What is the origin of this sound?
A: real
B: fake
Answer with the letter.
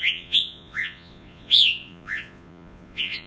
B